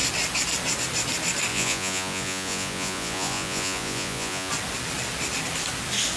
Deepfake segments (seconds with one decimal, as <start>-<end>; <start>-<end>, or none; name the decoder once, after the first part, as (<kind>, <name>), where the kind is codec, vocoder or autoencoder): 1.5-4.5 (vocoder, Vocos)